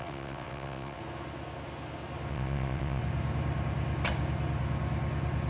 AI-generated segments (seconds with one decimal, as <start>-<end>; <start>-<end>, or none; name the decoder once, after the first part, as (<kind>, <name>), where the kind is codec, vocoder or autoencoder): 0.0-1.0 (vocoder, WaveNeXt); 2.3-3.0